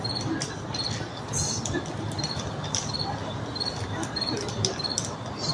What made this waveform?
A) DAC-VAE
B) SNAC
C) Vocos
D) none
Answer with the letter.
D